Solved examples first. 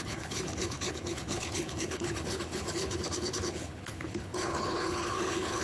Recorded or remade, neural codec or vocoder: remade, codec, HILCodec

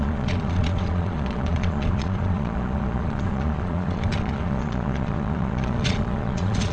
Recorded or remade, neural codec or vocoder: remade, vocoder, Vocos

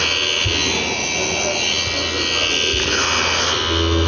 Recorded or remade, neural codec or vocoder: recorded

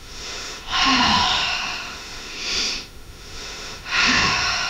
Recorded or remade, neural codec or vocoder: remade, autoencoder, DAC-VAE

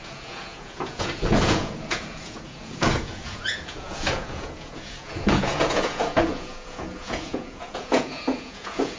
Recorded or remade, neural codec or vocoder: remade, vocoder, Vocos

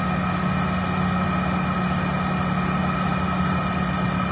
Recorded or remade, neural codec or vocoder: recorded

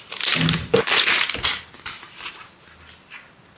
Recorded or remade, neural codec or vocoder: recorded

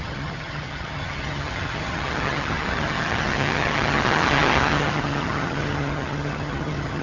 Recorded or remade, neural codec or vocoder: remade, vocoder, HiFi-GAN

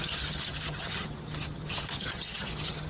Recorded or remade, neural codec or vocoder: remade, vocoder, HiFi-GAN